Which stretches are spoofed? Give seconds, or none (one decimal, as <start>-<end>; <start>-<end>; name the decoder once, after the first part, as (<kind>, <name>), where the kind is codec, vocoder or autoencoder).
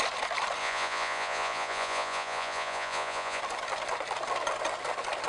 0.6-3.4 (vocoder, Vocos)